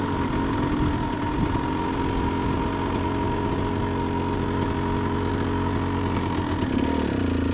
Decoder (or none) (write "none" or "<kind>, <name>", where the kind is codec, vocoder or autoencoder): none